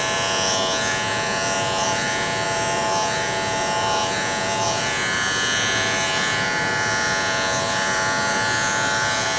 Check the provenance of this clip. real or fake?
fake